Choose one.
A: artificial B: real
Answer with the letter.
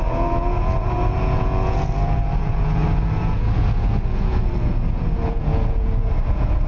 A